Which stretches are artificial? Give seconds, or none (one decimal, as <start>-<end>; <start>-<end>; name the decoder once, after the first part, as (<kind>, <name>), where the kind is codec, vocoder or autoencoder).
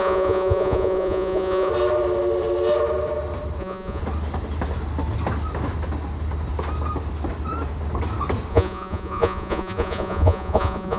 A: 0.0-1.7 (vocoder, Vocos); 3.6-4.0; 8.5-11.0